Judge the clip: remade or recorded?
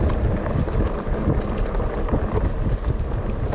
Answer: recorded